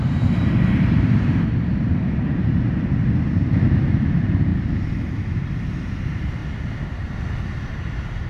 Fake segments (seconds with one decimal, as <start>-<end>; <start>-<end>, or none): 0.0-4.5; 5.1-6.4; 7.7-8.3